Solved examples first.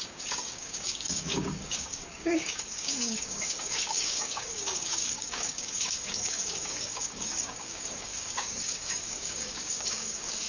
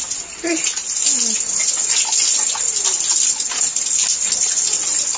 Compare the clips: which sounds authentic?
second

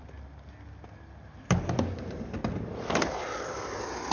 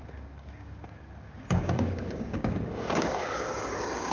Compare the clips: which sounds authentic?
first